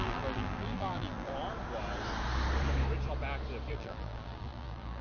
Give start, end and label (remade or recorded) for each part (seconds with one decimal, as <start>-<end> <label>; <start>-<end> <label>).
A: 0.0-1.3 remade; 1.3-3.7 recorded; 3.7-5.0 remade